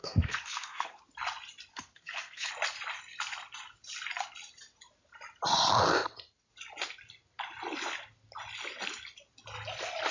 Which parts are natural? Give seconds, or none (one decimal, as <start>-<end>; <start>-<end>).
1.0-1.7; 2.5-10.1